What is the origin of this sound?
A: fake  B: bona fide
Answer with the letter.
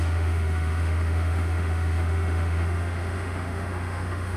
A